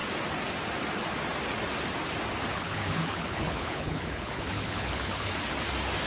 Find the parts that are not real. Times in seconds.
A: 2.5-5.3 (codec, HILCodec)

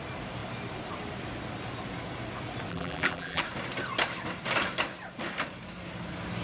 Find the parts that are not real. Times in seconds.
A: 2.7-3.4 (vocoder, BigVGAN v2)